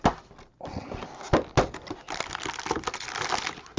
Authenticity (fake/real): real